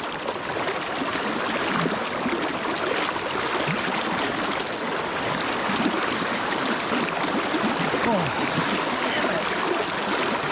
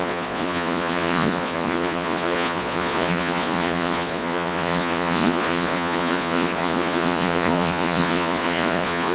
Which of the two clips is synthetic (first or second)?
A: second